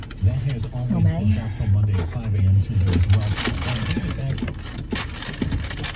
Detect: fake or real real